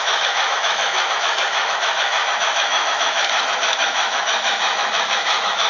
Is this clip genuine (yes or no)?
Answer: no